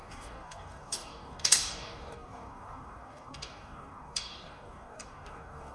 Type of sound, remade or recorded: remade